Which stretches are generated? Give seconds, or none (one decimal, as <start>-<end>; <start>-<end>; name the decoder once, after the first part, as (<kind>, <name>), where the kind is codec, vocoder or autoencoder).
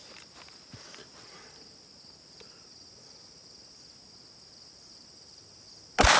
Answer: none